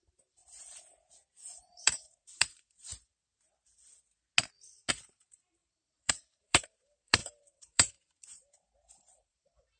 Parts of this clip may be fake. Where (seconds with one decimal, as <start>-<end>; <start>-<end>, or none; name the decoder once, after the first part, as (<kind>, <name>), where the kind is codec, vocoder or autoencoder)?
0.0-0.4 (vocoder, BigVGAN v2); 1.6-2.9; 4.9-9.8